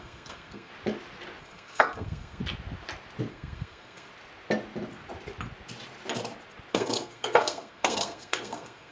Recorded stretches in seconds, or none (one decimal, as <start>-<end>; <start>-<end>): 0.7-1.4; 2.4-3.3; 4.1-6.7